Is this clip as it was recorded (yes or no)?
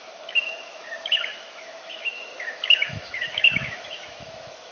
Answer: no